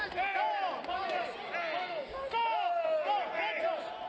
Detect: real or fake real